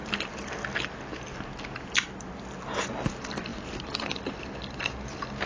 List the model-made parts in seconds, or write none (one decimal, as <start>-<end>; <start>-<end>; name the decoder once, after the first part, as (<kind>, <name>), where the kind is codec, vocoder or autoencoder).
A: 3.5-4.4 (vocoder, BigVGAN v2)